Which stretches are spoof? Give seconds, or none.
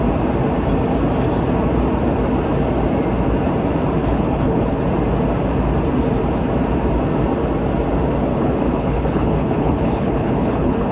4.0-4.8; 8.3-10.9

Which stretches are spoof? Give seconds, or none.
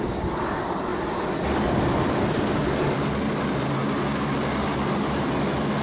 none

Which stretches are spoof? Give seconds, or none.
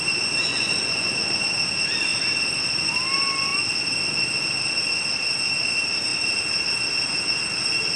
0.5-1.1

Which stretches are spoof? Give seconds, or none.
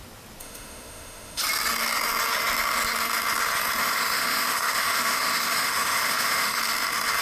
0.4-1.4; 3.8-6.6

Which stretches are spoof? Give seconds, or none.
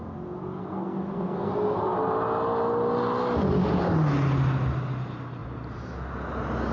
0.6-1.5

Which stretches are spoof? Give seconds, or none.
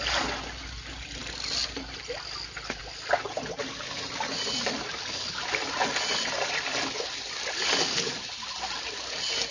none